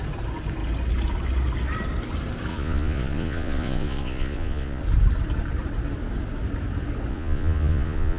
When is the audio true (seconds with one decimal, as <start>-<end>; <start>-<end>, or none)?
0.0-2.5; 4.8-7.1